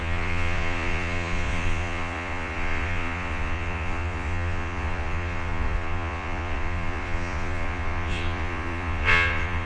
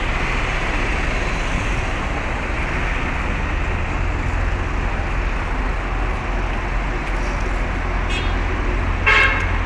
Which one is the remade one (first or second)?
first